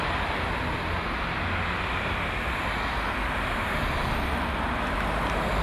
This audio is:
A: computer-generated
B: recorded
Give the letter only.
B